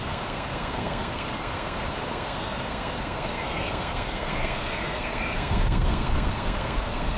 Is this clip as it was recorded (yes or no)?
no